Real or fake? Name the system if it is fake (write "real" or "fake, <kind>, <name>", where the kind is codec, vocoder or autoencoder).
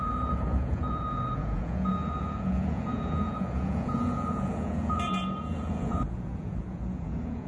fake, vocoder, Vocos